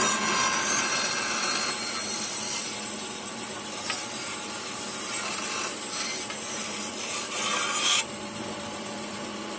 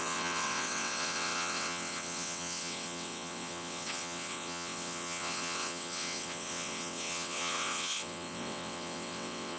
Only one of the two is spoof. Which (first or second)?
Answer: second